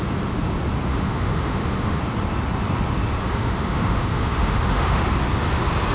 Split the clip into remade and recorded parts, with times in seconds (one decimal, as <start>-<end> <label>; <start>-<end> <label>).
0.0-0.9 recorded; 0.9-2.0 remade; 2.0-3.2 recorded; 3.2-5.0 remade; 5.0-5.9 recorded